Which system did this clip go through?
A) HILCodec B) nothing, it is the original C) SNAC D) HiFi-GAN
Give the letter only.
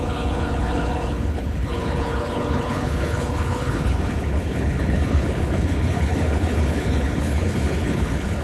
A